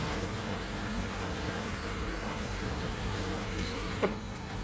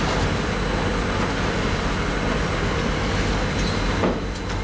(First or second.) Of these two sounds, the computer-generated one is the first